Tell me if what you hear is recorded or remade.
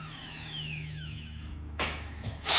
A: remade